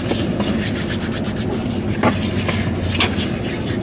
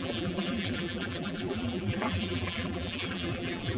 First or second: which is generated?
second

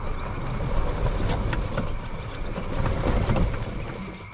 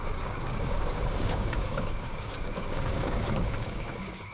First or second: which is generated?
second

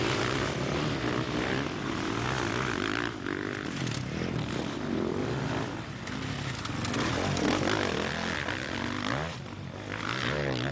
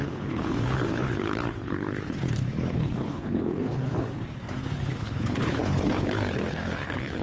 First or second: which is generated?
second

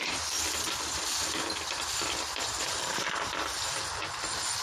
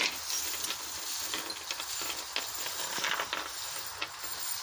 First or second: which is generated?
first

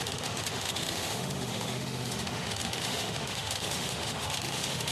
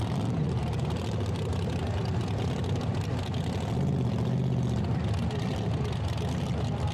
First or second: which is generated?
first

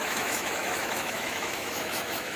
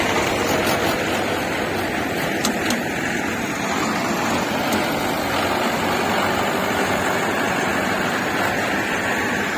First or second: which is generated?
first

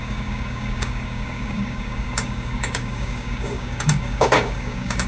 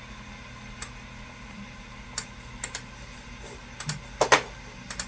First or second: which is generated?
first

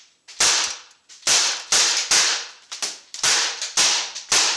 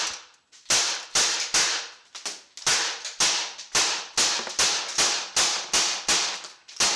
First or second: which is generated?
first